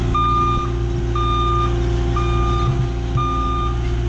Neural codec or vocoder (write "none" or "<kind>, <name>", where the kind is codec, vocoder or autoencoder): none